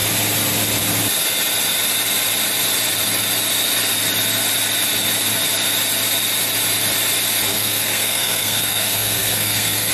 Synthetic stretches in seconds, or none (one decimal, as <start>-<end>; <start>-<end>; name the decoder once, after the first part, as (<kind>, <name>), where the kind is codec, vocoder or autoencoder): 7.5-9.9 (codec, SNAC)